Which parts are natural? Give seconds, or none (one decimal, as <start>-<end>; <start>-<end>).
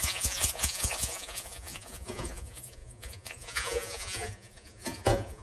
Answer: none